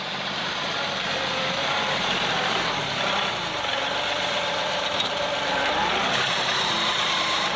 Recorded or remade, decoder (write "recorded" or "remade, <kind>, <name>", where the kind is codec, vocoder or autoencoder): remade, vocoder, BigVGAN v2